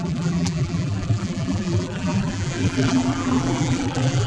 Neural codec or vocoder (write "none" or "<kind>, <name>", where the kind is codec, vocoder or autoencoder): vocoder, BigVGAN v2